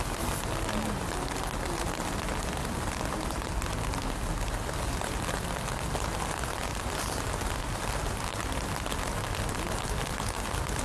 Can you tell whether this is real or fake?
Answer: real